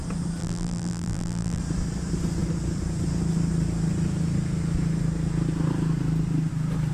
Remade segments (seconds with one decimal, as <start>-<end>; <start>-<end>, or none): 0.4-1.6